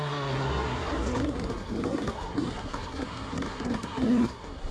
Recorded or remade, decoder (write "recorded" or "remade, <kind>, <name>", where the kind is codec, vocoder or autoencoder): remade, codec, SNAC